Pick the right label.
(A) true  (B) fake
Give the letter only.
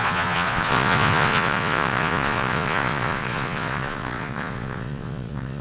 B